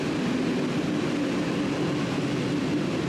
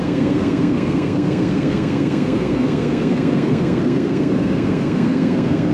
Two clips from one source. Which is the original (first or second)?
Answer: first